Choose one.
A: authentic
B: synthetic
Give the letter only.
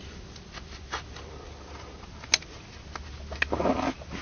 A